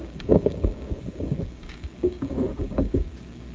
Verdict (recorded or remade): remade